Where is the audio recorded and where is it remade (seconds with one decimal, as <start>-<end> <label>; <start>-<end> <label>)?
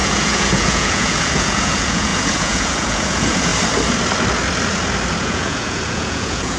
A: 0.0-3.5 remade; 3.5-5.2 recorded; 5.2-6.6 remade